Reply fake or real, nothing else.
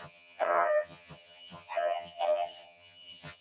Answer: fake